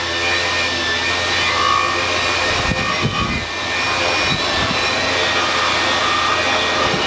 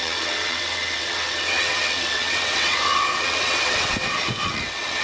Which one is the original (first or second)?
first